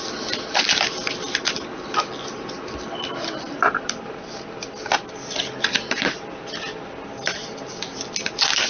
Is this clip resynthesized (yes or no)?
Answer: no